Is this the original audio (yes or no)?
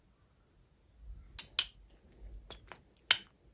yes